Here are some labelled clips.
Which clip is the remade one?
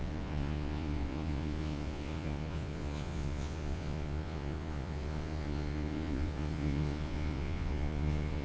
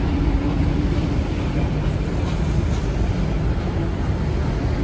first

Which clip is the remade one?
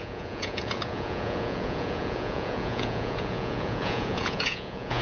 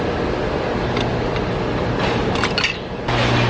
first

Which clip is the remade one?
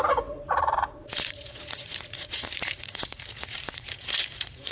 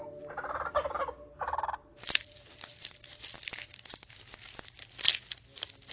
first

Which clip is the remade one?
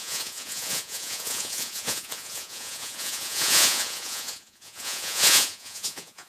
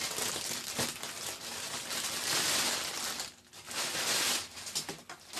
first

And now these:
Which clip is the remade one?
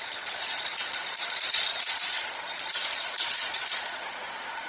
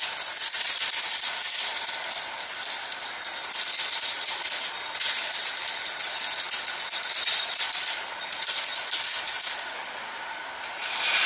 first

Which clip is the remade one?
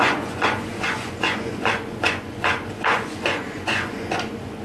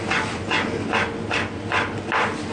first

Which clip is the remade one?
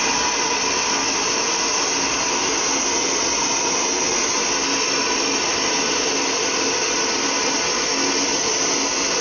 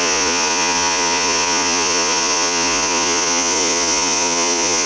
second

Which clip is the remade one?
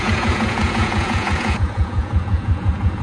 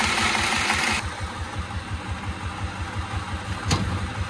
first